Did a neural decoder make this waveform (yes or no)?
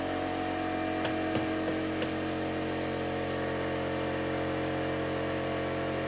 no